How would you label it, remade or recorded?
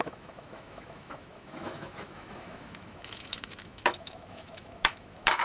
remade